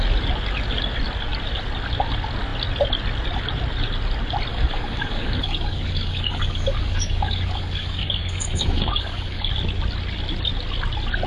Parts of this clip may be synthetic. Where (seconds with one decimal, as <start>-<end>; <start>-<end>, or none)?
4.5-9.5